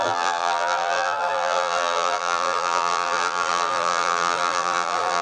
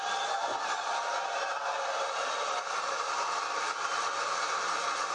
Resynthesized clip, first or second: first